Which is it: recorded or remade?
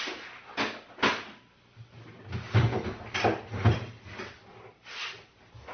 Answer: recorded